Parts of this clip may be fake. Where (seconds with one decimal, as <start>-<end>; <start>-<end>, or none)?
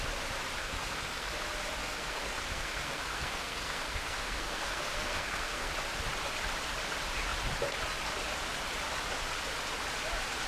0.6-1.3; 1.8-5.7